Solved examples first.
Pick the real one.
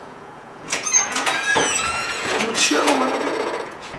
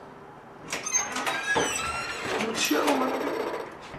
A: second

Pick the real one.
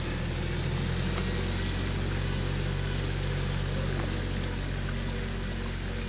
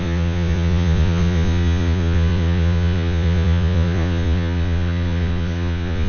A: first